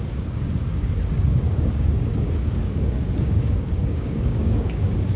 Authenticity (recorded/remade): remade